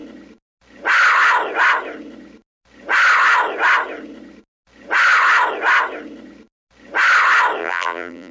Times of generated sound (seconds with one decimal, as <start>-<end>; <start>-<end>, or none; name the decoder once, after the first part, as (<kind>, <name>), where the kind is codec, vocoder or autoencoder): 7.6-8.3 (vocoder, BigVGAN v2)